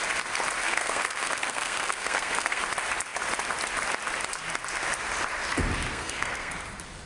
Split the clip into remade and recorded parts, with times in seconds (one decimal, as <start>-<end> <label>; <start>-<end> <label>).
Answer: 0.0-0.6 recorded; 0.6-2.6 remade; 2.6-5.9 recorded; 5.9-6.5 remade; 6.5-7.1 recorded